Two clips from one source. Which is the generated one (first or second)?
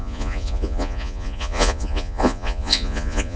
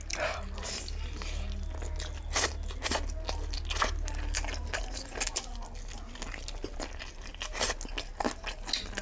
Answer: first